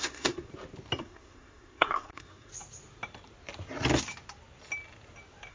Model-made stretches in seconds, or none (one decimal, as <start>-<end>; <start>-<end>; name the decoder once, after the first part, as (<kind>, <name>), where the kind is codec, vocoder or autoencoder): 0.0-0.5 (codec, SNAC); 1.0-2.5